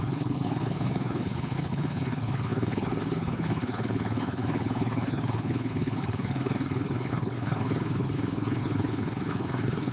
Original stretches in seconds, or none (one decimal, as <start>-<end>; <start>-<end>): none